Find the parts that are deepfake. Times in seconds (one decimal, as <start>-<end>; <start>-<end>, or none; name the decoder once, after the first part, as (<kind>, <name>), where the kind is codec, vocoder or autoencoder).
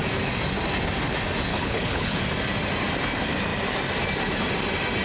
1.5-2.2 (codec, HILCodec)